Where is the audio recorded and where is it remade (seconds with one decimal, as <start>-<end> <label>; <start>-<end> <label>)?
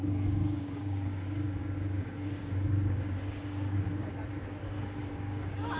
0.0-4.1 remade; 4.1-4.6 recorded; 4.6-5.8 remade